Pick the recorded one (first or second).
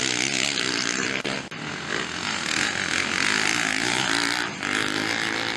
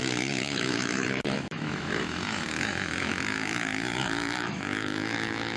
first